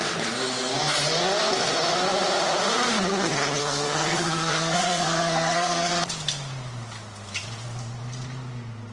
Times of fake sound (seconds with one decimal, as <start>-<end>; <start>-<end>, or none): 3.6-5.9